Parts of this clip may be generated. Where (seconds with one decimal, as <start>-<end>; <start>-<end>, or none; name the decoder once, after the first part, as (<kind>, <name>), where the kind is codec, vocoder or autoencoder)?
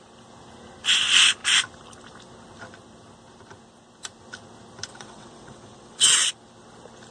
4.9-6.3 (vocoder, WaveNeXt)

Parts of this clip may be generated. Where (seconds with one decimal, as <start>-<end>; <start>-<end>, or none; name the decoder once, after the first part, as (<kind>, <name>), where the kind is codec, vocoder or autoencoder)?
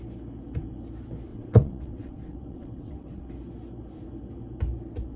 1.3-3.3 (vocoder, WaveNeXt)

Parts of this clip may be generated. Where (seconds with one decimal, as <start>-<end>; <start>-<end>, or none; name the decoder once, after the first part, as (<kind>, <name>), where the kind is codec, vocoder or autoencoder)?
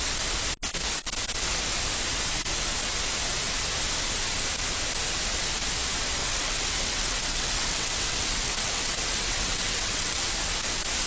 6.2-10.3 (vocoder, WaveNeXt)